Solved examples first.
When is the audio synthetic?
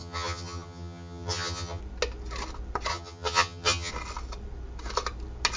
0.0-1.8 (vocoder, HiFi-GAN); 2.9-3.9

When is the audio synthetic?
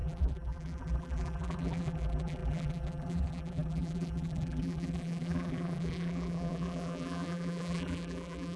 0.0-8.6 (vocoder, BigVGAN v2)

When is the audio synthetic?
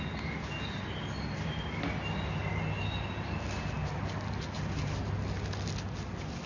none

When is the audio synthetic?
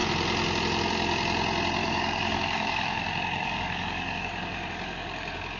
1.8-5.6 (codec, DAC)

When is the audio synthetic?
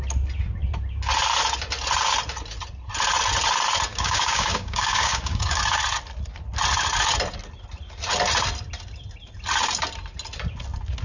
3.9-5.6 (codec, DAC)